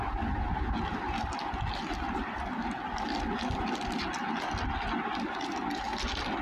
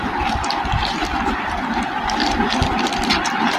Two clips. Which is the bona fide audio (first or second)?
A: first